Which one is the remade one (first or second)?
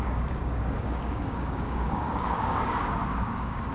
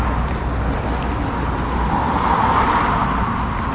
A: first